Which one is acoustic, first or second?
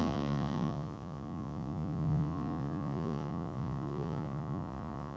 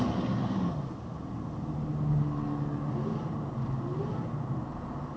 second